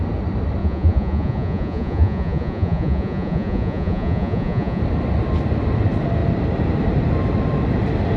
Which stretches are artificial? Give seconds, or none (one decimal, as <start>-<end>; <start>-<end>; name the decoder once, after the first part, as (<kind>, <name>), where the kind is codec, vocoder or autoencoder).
0.6-4.8 (vocoder, Vocos)